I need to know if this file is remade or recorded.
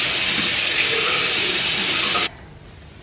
recorded